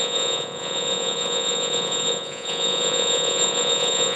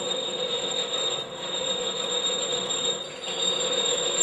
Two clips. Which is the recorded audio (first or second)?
second